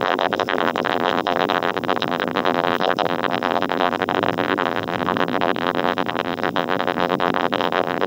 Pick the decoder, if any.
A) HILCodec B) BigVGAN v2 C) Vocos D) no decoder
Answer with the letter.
B